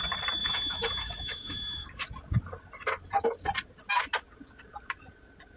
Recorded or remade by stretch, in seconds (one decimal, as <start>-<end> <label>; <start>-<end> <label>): 0.0-0.4 recorded; 0.4-1.9 remade; 1.9-5.6 recorded